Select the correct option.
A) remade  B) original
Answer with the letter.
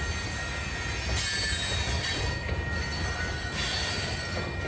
B